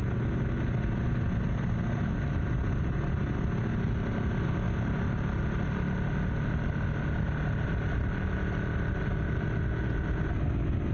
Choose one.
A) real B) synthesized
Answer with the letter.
A